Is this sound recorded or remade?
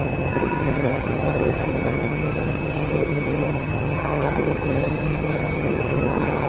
remade